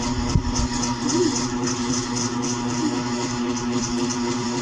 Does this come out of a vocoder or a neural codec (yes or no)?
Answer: yes